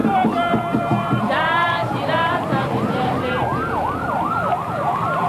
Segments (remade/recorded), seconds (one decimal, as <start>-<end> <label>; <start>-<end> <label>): 0.0-5.3 recorded